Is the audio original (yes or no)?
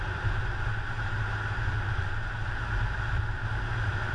yes